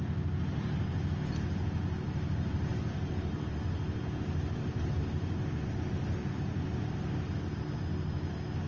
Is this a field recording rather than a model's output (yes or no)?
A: yes